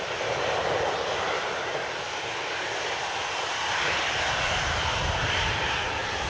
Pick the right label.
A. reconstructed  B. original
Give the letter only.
B